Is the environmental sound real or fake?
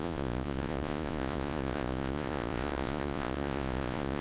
fake